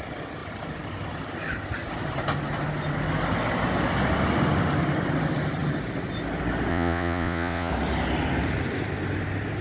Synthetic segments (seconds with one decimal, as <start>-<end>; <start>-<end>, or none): 6.7-7.7